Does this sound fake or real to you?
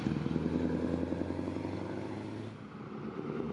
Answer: real